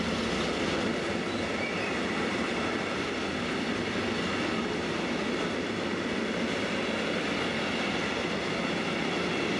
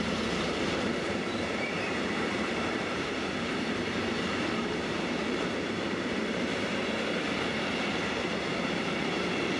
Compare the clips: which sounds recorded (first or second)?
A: first